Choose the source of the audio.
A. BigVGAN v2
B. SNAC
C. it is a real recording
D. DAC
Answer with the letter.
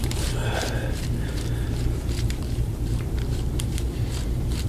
A